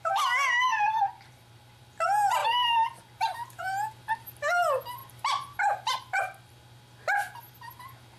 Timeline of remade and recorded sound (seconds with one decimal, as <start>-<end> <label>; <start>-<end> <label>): 0.0-0.7 recorded; 0.7-1.8 remade; 1.8-2.4 recorded; 2.4-3.6 remade; 3.6-5.0 recorded; 5.0-6.2 remade; 6.2-8.2 recorded